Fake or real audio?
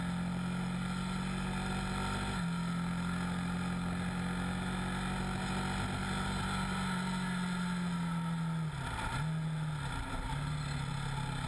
real